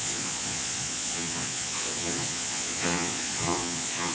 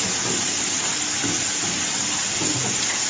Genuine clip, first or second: second